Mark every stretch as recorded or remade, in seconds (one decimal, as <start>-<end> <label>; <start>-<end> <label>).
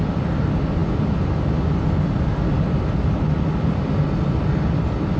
0.0-5.2 recorded